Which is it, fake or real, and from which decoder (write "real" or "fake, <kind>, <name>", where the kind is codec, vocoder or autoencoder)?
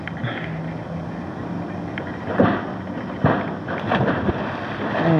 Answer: real